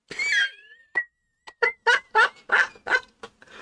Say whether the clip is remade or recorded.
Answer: recorded